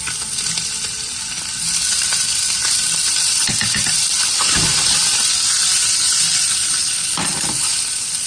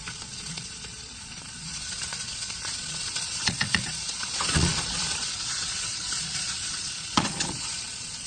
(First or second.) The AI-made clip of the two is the second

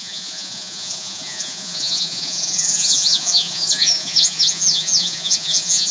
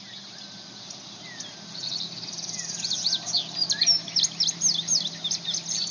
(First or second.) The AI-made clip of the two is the first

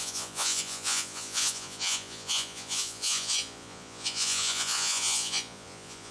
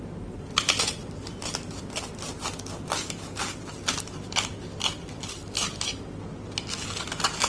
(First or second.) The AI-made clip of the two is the first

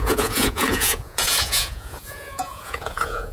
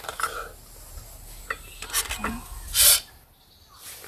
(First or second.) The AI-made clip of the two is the first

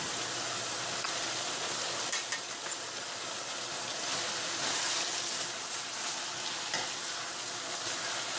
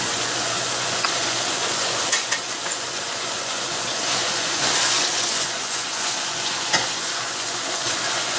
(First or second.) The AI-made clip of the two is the second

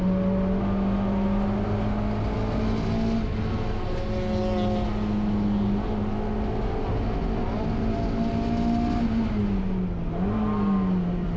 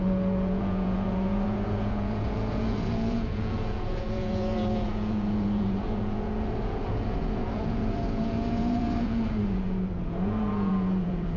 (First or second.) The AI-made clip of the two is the second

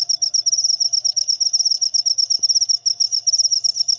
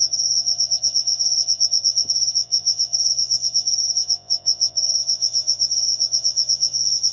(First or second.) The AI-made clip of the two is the second